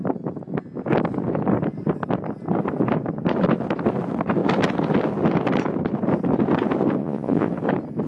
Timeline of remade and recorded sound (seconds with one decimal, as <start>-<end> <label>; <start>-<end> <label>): 0.0-7.0 recorded; 7.0-7.5 remade; 7.5-8.1 recorded